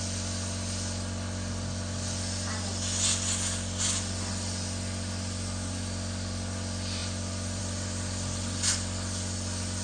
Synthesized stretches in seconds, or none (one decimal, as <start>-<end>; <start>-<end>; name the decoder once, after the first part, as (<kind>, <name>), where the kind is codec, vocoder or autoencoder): none